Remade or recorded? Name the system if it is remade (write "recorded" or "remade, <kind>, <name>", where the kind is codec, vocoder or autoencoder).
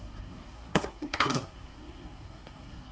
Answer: remade, codec, SNAC